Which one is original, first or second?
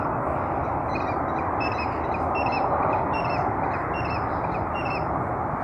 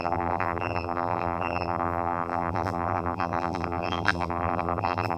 first